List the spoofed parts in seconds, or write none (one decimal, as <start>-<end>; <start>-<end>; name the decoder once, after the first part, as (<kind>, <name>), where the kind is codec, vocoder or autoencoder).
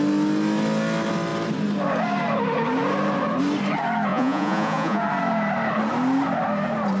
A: 4.1-5.0 (vocoder, Vocos)